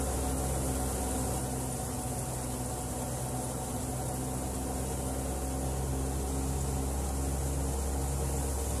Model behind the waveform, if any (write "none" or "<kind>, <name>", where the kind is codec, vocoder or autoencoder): none